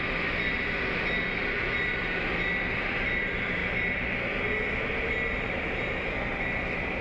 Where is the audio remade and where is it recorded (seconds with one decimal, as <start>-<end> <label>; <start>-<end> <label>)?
0.0-1.4 recorded; 1.4-2.0 remade; 2.0-7.0 recorded